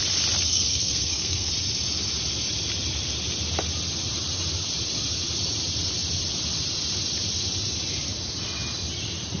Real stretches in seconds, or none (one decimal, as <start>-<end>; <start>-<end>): 0.0-0.5; 1.5-9.4